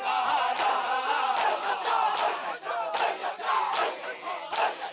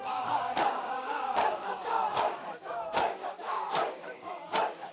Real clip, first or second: first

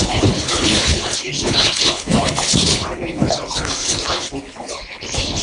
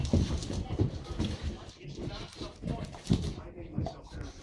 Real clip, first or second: second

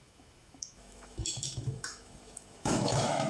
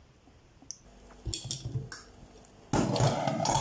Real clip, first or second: second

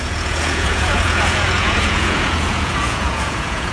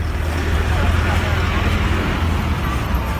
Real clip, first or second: second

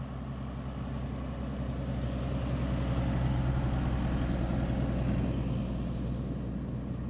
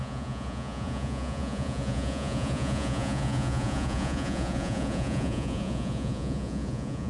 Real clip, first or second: first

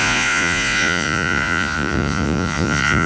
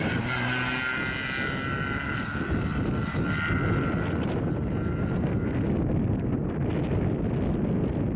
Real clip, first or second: second